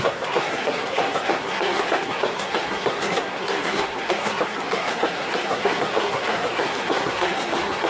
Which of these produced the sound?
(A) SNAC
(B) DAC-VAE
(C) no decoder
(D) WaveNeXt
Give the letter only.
A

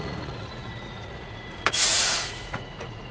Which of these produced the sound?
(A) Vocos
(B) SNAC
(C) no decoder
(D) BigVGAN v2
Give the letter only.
A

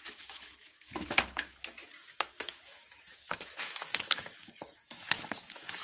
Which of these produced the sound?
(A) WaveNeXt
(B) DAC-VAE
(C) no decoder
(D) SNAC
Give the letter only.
B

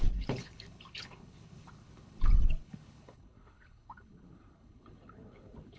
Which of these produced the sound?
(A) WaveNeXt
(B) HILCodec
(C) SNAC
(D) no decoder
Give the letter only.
B